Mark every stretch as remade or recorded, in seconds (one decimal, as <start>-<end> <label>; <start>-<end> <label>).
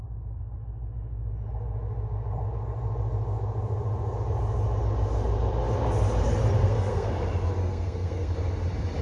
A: 0.0-6.6 recorded; 6.6-7.1 remade; 7.1-7.6 recorded; 7.6-8.3 remade; 8.3-9.0 recorded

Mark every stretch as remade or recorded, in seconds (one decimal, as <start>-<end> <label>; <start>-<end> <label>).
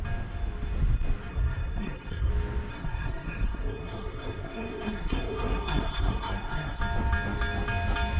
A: 0.0-1.3 recorded; 1.3-2.3 remade; 2.3-2.7 recorded; 2.7-6.8 remade; 6.8-8.2 recorded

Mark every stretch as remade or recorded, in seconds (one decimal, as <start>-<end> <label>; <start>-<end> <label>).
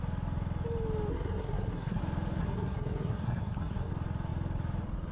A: 0.0-1.1 recorded; 1.1-2.0 remade; 2.0-2.4 recorded; 2.4-3.9 remade; 3.9-5.1 recorded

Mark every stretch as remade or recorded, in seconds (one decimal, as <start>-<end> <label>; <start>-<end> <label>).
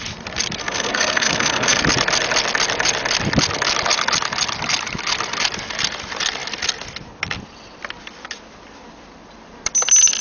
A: 0.0-0.6 recorded; 0.6-1.8 remade; 1.8-10.2 recorded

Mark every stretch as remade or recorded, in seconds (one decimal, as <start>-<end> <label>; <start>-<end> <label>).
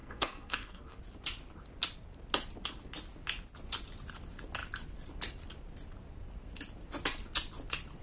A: 0.0-1.0 remade; 1.0-8.0 recorded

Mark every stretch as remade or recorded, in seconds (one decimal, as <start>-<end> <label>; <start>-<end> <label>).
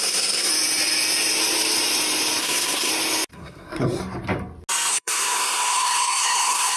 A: 0.0-0.5 remade; 0.5-2.4 recorded; 2.4-2.9 remade; 2.9-3.3 recorded; 3.3-4.0 remade; 4.0-4.9 recorded; 4.9-6.8 remade